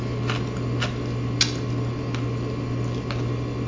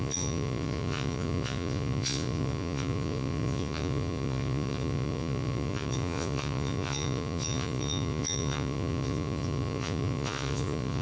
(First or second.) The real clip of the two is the first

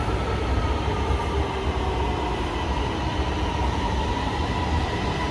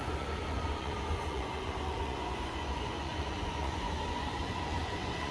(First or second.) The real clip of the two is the first